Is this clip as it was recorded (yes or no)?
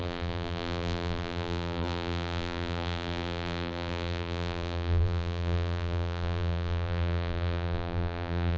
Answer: no